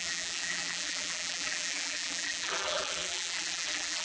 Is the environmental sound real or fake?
fake